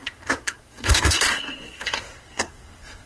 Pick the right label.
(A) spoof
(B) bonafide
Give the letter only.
A